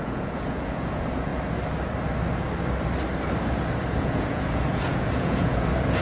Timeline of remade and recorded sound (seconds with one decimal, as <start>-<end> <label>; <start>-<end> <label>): 0.0-1.3 remade; 1.3-4.0 recorded; 4.0-6.0 remade